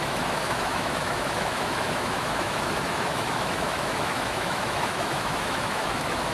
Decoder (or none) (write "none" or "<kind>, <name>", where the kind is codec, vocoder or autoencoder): autoencoder, DAC-VAE